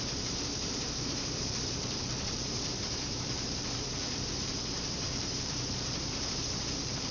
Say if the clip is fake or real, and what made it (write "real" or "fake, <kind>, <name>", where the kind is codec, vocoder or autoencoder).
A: fake, vocoder, BigVGAN v2